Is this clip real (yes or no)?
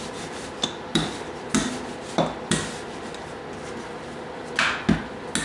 yes